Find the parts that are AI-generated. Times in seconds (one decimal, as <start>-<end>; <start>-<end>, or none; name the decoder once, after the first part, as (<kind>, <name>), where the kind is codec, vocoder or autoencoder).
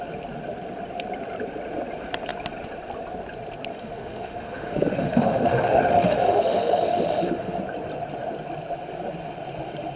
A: 3.7-7.6 (autoencoder, DAC-VAE)